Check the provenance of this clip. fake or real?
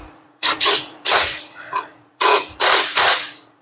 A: fake